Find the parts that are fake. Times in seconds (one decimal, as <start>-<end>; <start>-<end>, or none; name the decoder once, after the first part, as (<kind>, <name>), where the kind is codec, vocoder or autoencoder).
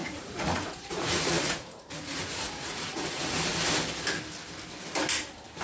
0.0-3.4 (vocoder, Vocos)